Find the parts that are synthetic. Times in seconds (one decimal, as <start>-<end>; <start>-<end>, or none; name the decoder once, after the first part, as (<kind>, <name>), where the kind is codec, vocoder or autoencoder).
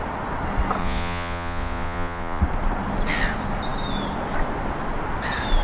0.8-2.4 (vocoder, Vocos)